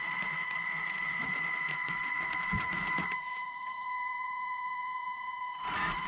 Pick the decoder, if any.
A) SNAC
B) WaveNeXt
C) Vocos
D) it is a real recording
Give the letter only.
C